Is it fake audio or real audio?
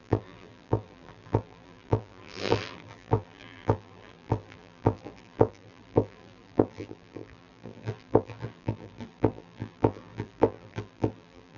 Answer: fake